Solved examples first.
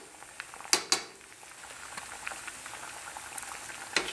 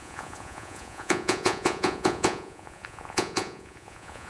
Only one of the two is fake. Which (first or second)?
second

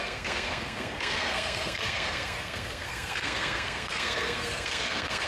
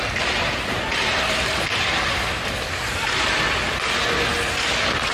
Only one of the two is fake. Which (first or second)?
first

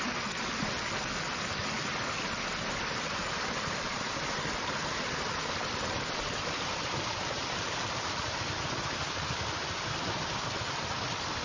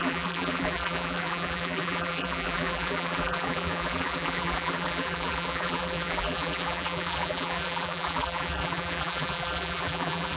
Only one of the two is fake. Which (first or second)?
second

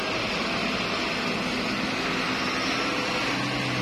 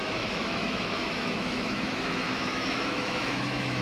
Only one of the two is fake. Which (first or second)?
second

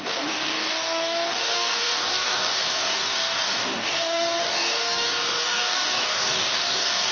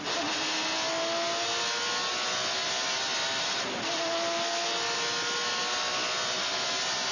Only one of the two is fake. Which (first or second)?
first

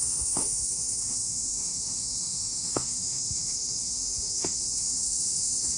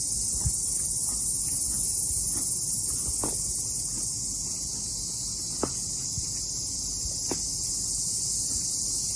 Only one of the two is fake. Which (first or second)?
first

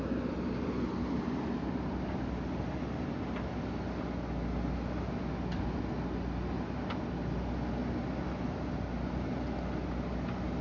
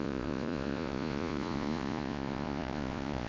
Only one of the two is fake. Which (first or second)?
second